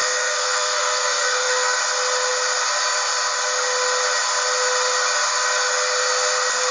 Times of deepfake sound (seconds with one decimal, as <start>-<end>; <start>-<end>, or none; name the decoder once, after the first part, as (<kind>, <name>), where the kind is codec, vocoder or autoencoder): 0.0-1.8 (codec, SNAC)